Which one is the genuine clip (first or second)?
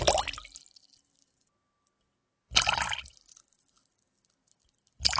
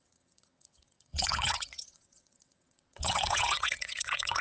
first